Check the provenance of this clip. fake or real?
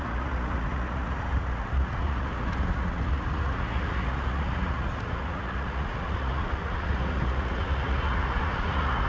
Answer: fake